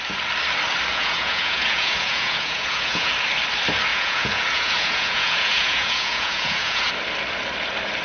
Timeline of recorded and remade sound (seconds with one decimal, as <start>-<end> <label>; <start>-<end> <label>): 0.0-0.9 recorded; 0.9-3.1 remade; 3.1-3.9 recorded; 3.9-6.9 remade; 6.9-8.0 recorded